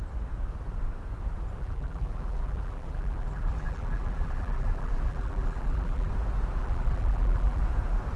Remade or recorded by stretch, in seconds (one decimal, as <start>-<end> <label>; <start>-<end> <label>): 0.0-1.6 recorded; 1.6-6.1 remade; 6.1-6.6 recorded; 6.6-7.6 remade; 7.6-8.2 recorded